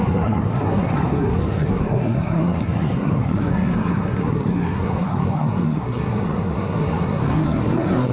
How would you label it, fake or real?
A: fake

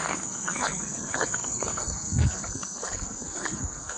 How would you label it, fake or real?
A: fake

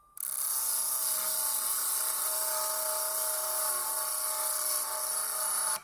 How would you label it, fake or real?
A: real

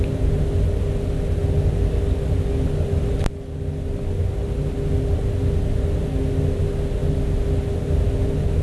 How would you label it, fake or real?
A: real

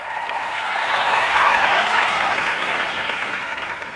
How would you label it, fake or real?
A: fake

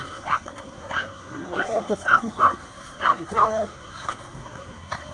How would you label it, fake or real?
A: fake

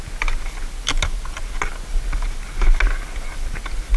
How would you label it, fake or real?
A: real